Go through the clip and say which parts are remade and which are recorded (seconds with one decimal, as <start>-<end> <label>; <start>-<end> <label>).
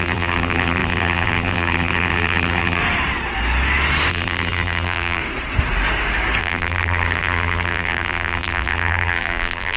0.0-2.8 remade; 2.8-4.1 recorded; 4.1-5.2 remade; 5.2-6.4 recorded; 6.4-9.8 remade